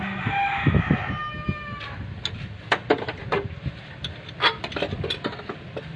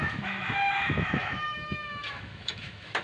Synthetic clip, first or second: second